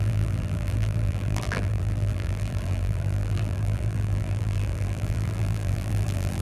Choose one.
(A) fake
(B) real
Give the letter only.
A